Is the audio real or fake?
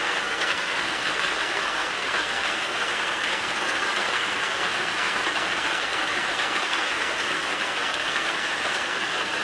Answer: fake